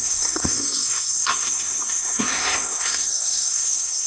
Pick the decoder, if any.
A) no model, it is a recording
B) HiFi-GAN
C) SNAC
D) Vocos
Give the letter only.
C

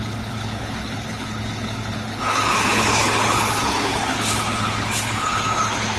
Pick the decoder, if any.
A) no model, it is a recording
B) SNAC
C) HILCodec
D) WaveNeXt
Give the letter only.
C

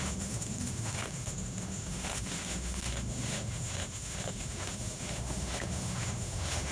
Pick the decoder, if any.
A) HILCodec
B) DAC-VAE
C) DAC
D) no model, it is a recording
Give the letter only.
B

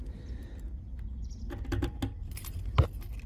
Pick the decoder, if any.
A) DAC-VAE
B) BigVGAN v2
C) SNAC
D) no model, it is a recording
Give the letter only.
D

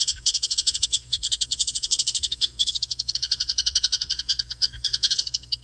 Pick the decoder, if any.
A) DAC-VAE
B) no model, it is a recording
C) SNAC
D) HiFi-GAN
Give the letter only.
C